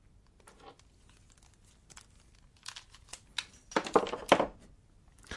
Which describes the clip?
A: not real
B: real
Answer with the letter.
B